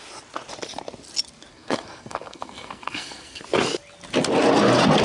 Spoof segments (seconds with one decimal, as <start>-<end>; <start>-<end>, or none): 1.5-3.4